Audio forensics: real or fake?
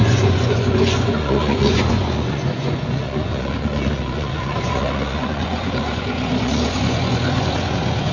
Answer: fake